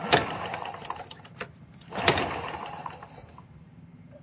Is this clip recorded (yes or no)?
no